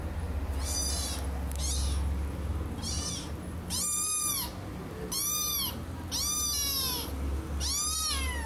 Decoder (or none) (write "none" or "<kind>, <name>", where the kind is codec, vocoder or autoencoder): none